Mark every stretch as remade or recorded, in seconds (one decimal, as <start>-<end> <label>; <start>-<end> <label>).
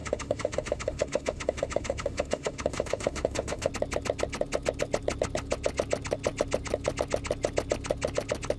0.0-3.7 remade; 3.7-8.6 recorded